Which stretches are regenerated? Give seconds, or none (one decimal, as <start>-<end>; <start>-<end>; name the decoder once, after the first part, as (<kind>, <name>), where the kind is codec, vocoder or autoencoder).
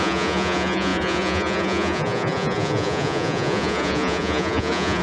0.0-5.0 (vocoder, Vocos)